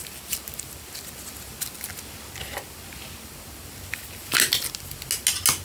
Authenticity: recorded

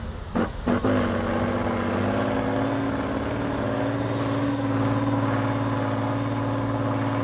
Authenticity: recorded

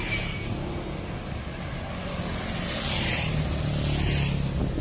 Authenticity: recorded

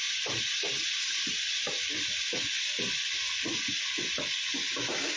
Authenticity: recorded